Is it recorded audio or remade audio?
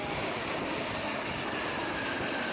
recorded